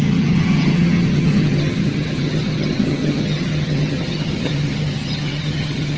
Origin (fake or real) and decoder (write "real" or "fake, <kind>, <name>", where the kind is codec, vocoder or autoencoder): fake, vocoder, HiFi-GAN